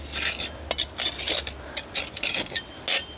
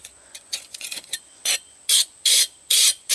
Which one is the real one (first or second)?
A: first